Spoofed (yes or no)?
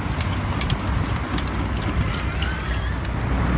no